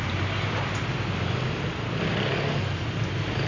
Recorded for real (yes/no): yes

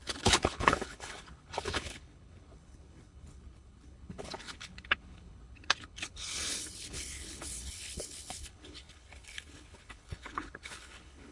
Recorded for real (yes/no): no